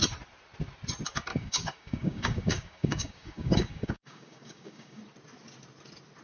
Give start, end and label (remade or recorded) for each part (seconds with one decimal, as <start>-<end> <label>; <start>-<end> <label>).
0.0-1.3 recorded; 1.3-5.0 remade; 5.0-6.2 recorded